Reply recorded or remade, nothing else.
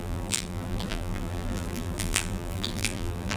remade